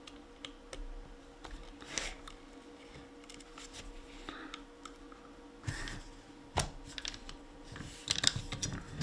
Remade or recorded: recorded